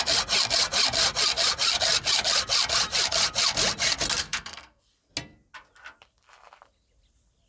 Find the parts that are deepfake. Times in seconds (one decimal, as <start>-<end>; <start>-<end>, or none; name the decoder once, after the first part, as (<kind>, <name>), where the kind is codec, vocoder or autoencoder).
4.2-4.8 (codec, SNAC)